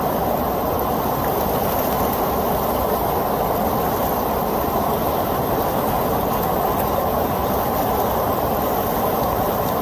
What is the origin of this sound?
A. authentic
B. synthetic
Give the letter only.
A